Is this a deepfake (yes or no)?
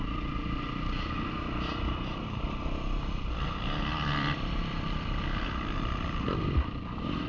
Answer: yes